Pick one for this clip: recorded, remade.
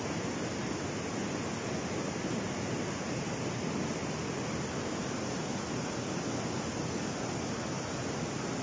recorded